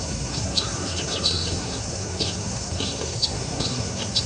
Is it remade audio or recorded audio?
remade